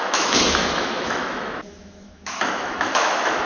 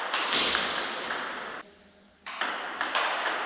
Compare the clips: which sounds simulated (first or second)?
first